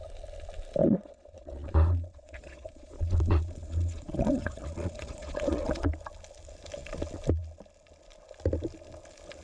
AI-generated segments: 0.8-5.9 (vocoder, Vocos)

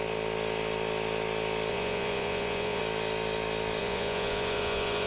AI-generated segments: 1.7-2.8 (vocoder, Vocos); 3.8-5.1

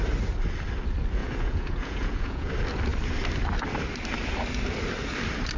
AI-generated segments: 1.2-2.5 (vocoder, Vocos)

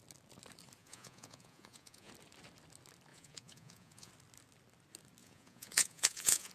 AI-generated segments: 0.8-2.1 (vocoder, Vocos); 3.1-4.1; 5.2-6.5

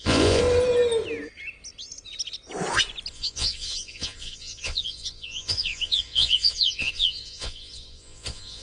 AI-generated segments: 0.0-0.4 (vocoder, Vocos); 3.1-8.6

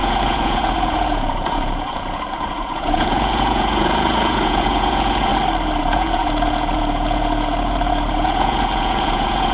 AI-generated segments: 0.0-5.3 (vocoder, Vocos); 5.8-9.5

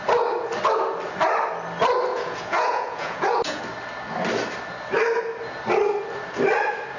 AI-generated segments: 2.1-3.6 (vocoder, Vocos)